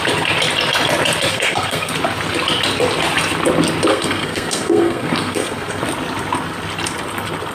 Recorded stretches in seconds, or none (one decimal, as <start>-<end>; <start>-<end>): 0.0-1.3; 1.9-3.9; 5.8-7.5